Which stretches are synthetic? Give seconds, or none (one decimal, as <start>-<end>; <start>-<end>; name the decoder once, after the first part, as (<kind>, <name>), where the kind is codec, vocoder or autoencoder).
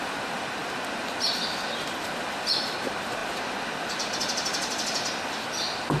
none